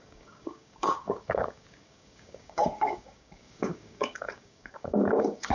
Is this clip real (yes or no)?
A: no